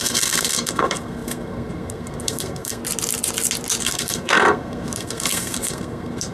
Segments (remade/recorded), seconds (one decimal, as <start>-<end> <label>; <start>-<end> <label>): 0.0-2.8 remade; 2.8-3.8 recorded; 3.8-6.3 remade